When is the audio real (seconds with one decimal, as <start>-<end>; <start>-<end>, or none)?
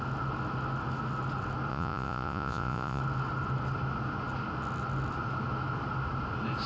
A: 0.0-1.7; 3.0-6.7